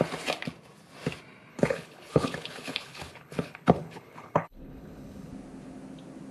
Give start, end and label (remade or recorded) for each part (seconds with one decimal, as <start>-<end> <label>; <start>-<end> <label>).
0.0-1.5 recorded; 1.5-5.3 remade; 5.3-6.3 recorded